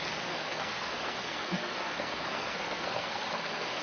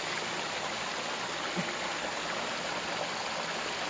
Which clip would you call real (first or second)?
second